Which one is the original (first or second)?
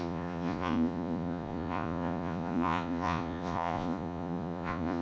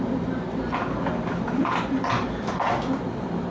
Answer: second